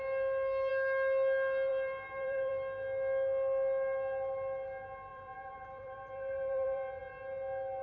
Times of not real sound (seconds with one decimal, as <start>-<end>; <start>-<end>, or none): 1.7-2.5; 5.1-7.0